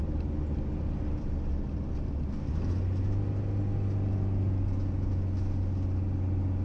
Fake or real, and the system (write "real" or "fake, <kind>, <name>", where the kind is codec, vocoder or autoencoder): real